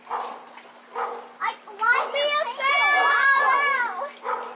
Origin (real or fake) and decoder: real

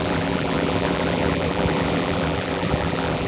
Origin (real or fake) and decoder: fake, vocoder, BigVGAN v2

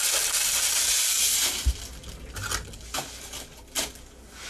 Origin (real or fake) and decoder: real